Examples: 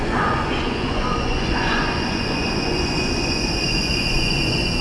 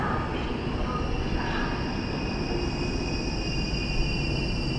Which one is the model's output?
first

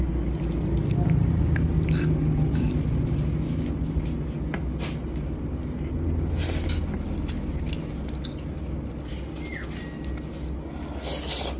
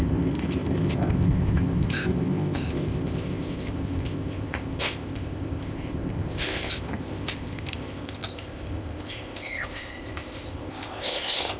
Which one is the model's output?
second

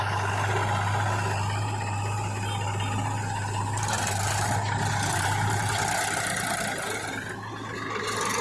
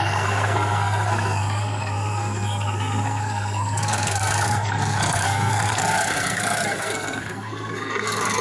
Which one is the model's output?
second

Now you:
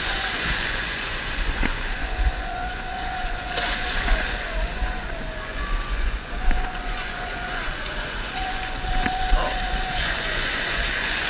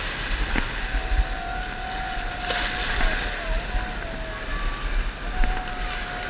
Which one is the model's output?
first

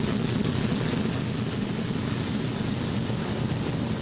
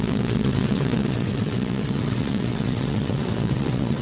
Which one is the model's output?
second